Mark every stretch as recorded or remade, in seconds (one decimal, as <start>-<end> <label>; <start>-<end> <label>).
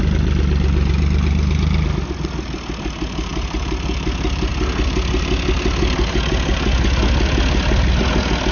0.0-8.5 recorded